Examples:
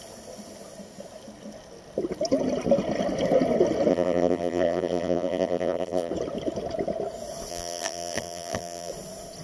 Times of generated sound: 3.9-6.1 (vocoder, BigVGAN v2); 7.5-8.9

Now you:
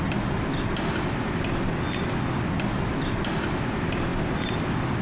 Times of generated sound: none

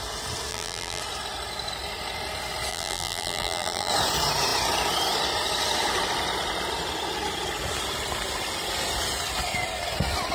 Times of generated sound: 0.5-1.0 (vocoder, BigVGAN v2); 2.7-3.9

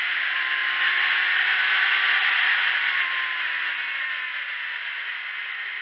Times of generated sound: none

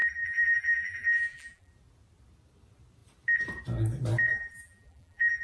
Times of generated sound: 0.0-1.7 (vocoder, BigVGAN v2); 4.3-5.4

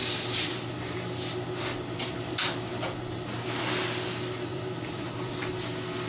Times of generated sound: 0.0-0.7 (vocoder, BigVGAN v2); 4.5-5.5